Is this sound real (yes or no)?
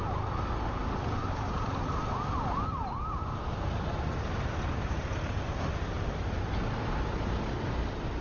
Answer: yes